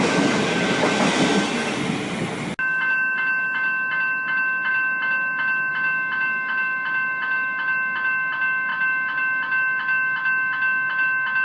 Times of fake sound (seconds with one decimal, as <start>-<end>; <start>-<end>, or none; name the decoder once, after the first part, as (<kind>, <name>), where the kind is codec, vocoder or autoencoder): none